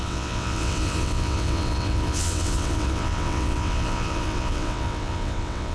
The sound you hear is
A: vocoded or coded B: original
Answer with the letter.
A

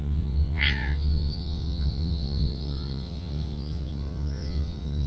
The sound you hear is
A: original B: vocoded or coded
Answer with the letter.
B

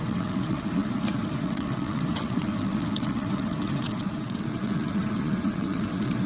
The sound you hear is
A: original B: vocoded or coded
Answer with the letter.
B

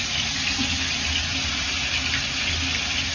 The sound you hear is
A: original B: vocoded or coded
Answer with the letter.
A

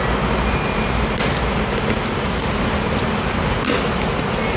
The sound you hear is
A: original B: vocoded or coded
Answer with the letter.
A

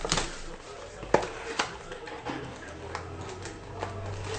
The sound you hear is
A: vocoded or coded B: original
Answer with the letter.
B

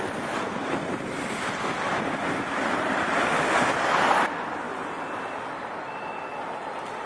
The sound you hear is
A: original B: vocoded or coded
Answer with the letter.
A